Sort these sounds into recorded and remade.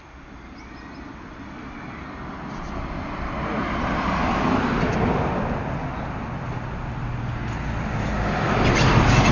recorded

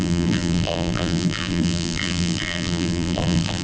remade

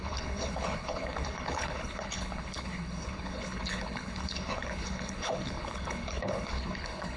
remade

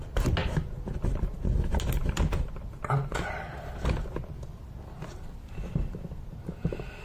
recorded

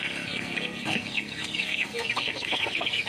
remade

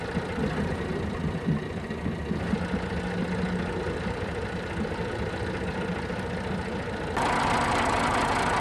recorded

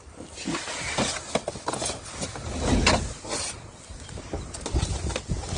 recorded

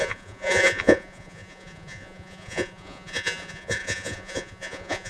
remade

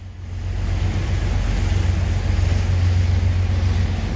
recorded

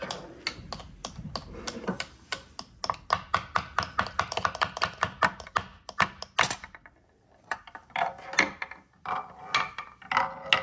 recorded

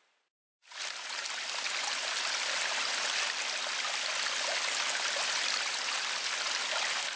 recorded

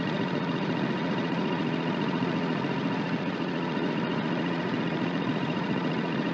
remade